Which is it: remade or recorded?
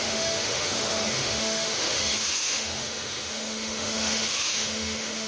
remade